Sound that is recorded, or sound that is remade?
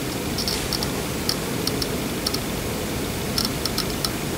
recorded